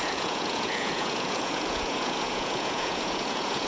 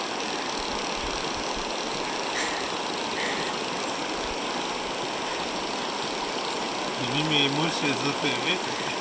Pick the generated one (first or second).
first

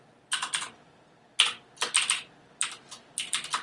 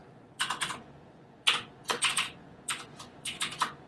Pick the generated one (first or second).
second